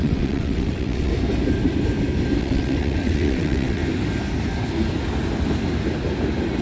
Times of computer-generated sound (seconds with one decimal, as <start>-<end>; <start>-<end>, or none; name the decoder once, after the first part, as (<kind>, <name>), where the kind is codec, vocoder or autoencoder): 0.0-1.1 (vocoder, WaveNeXt); 2.4-3.8